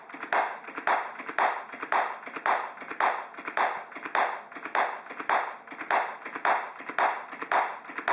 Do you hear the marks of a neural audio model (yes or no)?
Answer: no